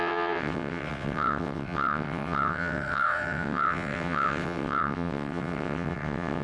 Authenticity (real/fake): fake